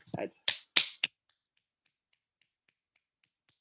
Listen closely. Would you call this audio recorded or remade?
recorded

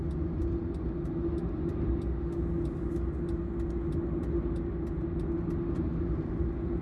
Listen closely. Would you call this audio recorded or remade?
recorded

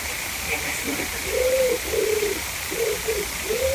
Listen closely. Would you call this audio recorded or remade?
remade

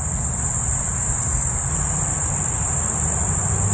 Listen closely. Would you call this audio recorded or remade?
recorded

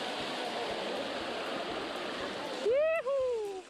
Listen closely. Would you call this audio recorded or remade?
recorded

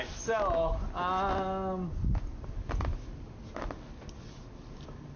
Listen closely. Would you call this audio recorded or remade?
recorded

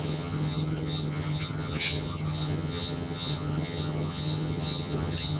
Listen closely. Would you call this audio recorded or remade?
remade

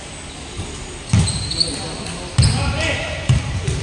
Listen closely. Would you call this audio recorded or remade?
recorded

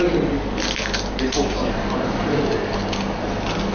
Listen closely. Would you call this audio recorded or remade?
recorded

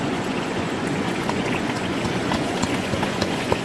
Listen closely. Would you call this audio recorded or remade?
remade